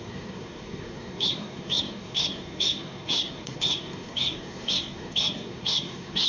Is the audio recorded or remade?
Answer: remade